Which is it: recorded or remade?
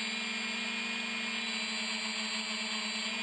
recorded